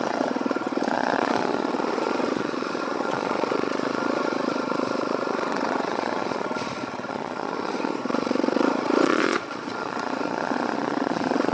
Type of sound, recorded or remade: remade